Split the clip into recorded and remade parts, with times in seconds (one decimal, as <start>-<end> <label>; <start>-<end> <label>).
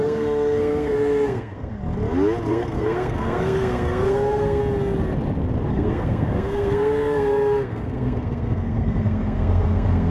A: 0.0-1.7 remade; 1.7-2.5 recorded; 2.5-4.6 remade; 4.6-5.7 recorded; 5.7-10.1 remade